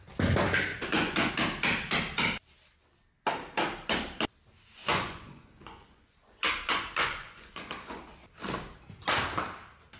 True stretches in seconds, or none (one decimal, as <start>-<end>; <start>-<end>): 0.0-0.7; 1.3-4.8; 8.0-10.0